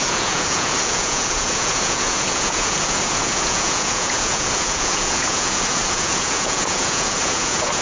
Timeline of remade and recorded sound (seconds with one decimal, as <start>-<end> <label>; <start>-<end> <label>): 0.0-7.8 remade